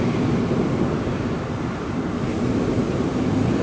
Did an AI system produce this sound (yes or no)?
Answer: no